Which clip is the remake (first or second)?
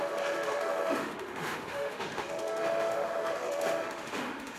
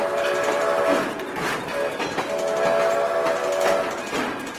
first